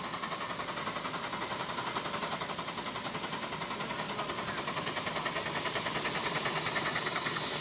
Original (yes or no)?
yes